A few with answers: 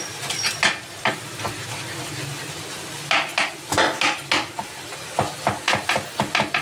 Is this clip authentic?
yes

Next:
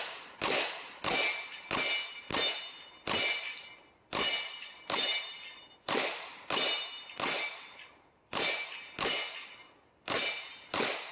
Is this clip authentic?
yes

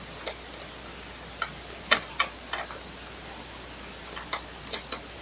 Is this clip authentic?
yes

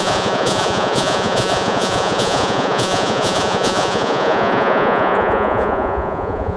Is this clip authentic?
no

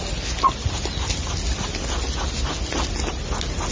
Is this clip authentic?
yes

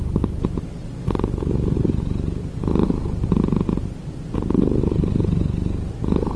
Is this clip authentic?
yes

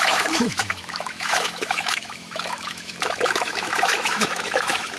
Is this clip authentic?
no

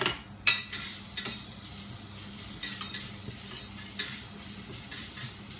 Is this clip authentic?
yes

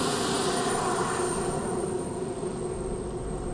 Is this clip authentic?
yes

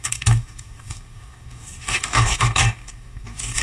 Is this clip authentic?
no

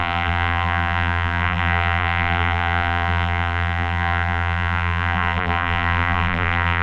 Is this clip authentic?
no